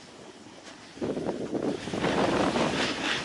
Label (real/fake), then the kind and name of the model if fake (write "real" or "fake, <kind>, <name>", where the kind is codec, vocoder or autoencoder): real